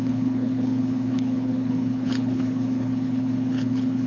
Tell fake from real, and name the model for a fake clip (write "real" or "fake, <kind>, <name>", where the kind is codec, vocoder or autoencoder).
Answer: fake, codec, HILCodec